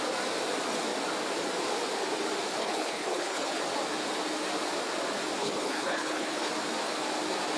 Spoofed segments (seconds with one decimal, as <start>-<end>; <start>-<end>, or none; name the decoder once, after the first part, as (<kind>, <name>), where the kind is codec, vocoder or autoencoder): 2.6-3.6 (codec, HILCodec); 5.4-6.5